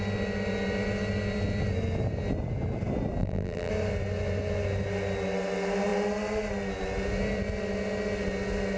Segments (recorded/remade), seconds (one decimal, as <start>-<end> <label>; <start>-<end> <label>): 0.0-3.2 recorded; 3.2-3.7 remade; 3.7-8.8 recorded